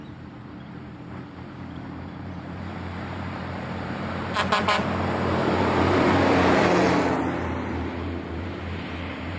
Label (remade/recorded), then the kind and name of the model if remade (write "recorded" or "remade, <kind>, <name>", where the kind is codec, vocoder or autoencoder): remade, vocoder, BigVGAN v2